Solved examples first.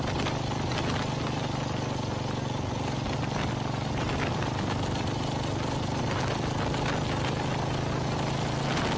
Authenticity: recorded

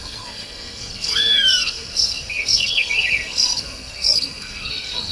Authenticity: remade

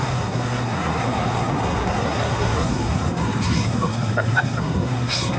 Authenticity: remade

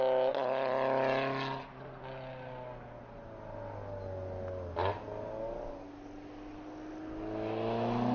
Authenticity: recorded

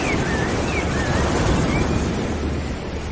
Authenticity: recorded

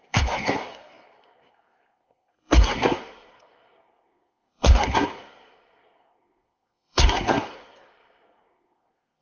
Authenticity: remade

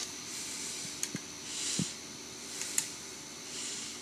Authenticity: recorded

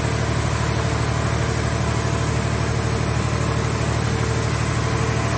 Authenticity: recorded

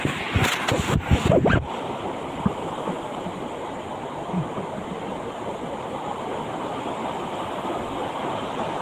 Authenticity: recorded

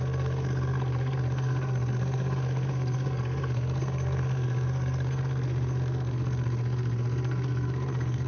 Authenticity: remade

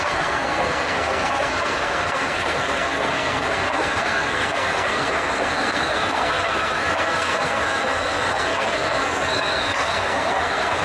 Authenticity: remade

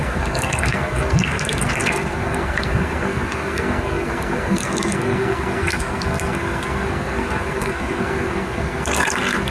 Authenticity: remade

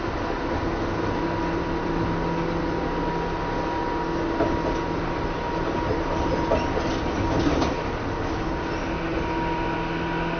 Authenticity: recorded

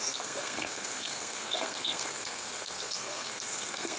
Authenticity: remade